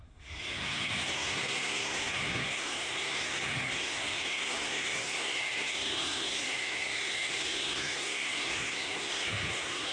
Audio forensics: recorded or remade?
remade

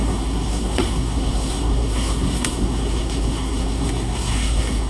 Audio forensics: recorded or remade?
remade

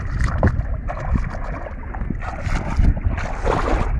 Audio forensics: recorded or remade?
recorded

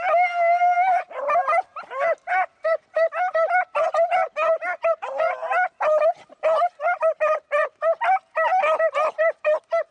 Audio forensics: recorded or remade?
recorded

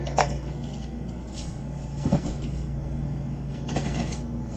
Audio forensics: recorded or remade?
remade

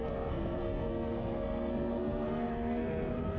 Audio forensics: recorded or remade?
remade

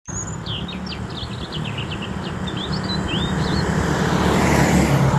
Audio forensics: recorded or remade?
recorded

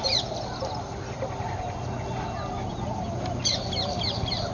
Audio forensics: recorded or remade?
recorded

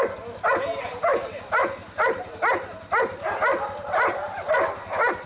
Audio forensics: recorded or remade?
recorded